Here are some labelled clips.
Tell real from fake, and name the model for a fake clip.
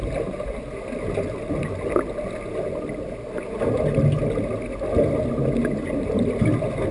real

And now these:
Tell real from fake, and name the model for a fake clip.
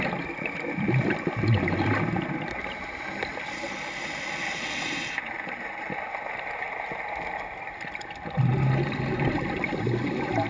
real